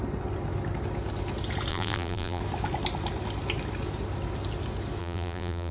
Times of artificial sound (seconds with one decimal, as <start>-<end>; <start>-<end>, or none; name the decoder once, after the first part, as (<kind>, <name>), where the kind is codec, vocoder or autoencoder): 1.7-2.4 (vocoder, BigVGAN v2); 5.0-5.7